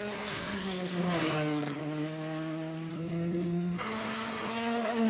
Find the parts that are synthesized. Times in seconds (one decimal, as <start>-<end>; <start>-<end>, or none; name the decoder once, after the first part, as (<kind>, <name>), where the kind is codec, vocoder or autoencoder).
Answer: 0.0-1.8 (codec, SNAC); 2.9-5.1